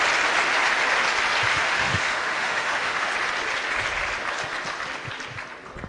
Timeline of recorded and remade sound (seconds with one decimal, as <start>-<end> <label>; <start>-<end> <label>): 0.0-1.5 recorded; 1.5-3.1 remade; 3.1-5.9 recorded